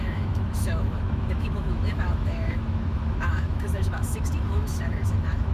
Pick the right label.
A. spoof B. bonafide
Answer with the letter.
A